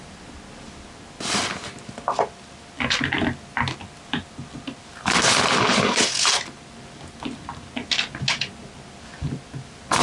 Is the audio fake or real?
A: real